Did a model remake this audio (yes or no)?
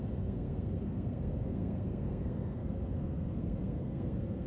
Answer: yes